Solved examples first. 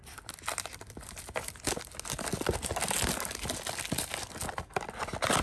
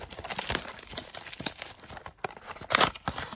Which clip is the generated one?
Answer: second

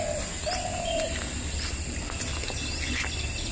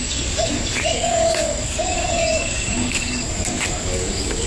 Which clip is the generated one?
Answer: second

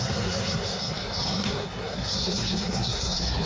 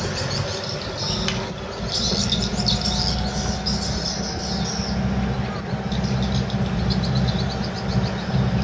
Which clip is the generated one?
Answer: first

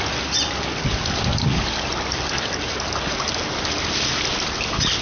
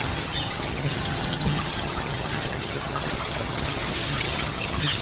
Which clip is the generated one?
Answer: second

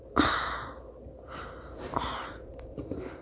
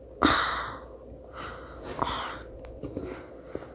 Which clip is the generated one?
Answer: first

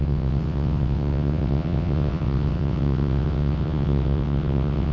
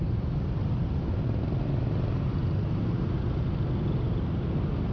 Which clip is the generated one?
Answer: first